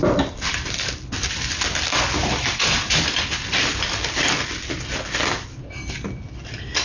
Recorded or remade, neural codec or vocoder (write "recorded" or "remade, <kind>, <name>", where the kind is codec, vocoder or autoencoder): recorded